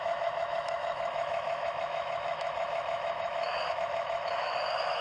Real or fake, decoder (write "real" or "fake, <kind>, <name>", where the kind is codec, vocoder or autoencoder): fake, autoencoder, DAC-VAE